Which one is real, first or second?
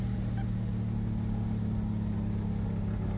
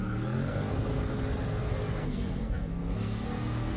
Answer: first